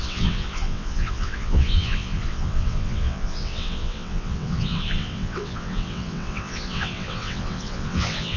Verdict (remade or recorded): remade